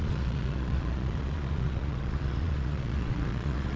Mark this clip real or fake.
fake